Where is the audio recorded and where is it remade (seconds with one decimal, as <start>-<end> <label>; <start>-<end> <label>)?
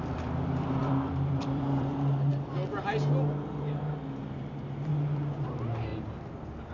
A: 0.0-2.3 remade; 2.3-4.9 recorded; 4.9-5.9 remade; 5.9-6.7 recorded